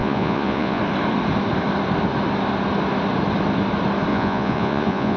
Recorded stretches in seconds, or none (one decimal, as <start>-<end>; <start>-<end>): 0.8-4.1